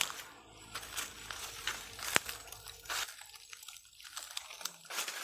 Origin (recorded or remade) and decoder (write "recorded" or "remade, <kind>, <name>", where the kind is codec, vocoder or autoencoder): remade, vocoder, BigVGAN v2